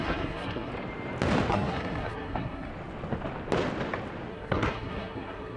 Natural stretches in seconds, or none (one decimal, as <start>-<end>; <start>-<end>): 0.7-1.5; 2.7-4.3

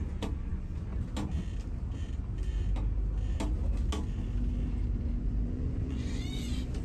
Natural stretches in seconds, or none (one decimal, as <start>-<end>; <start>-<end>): 0.9-5.0

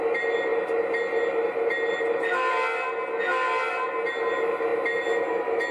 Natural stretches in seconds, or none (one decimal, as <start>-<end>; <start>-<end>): 0.0-5.7

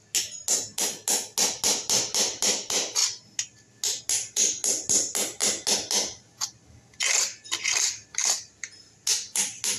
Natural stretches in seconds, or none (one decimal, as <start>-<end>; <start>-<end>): 0.0-8.2; 8.9-9.8

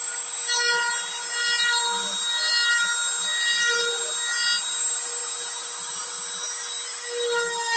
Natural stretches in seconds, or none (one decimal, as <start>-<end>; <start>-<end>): 0.0-7.8

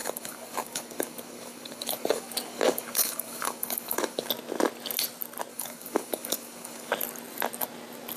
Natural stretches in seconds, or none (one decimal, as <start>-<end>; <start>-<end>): 4.3-5.5; 6.9-8.2

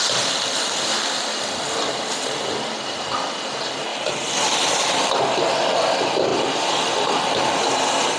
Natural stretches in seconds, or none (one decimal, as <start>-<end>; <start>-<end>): 0.0-3.9; 4.9-8.2